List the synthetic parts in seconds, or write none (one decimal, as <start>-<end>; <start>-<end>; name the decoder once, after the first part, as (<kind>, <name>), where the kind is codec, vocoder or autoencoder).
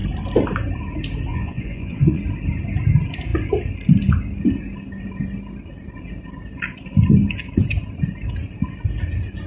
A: 1.3-2.2 (vocoder, Vocos)